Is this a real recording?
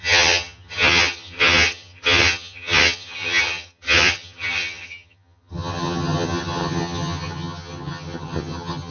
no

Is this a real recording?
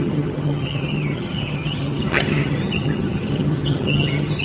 no